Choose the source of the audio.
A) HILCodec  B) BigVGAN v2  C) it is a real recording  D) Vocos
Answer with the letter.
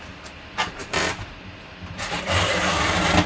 C